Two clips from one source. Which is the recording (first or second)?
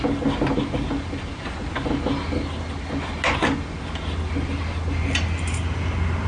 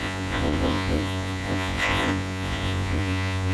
first